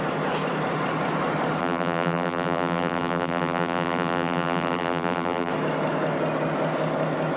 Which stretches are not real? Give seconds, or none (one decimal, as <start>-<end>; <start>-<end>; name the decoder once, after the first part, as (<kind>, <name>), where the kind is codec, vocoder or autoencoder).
1.6-5.5 (vocoder, BigVGAN v2)